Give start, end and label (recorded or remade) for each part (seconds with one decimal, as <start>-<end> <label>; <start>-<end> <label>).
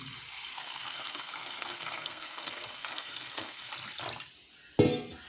0.0-0.5 recorded; 0.5-3.7 remade; 3.7-5.3 recorded